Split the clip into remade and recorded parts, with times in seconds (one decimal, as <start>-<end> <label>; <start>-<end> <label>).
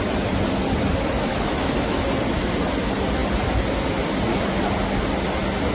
0.0-1.3 recorded; 1.3-2.0 remade; 2.0-5.7 recorded